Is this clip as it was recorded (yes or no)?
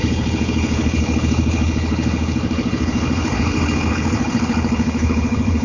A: no